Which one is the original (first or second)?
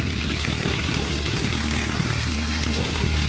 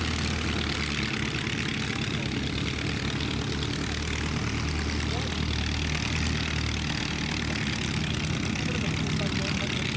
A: second